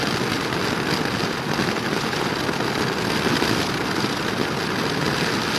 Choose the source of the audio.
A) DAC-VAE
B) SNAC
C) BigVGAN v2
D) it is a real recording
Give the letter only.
D